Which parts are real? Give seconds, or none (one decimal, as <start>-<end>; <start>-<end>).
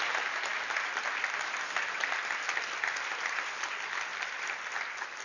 0.0-5.2